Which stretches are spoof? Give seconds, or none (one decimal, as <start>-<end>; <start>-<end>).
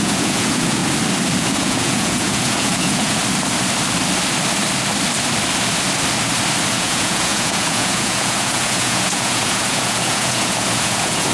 0.0-0.8; 1.4-3.2; 6.7-11.3